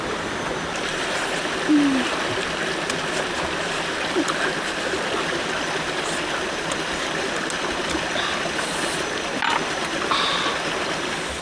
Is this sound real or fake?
real